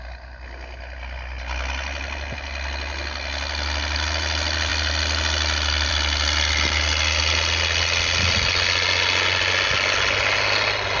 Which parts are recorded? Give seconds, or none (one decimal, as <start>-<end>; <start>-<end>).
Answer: 0.0-11.0